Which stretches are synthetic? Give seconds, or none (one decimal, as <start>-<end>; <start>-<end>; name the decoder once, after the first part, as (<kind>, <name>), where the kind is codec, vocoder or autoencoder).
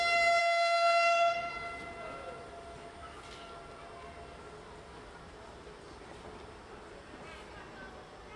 0.4-1.5 (autoencoder, DAC-VAE)